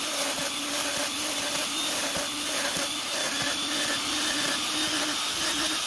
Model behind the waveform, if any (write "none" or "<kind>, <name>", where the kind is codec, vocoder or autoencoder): none